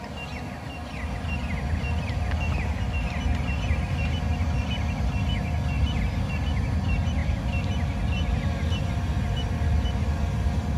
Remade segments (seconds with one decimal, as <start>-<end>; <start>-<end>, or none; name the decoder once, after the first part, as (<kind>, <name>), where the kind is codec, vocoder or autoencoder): none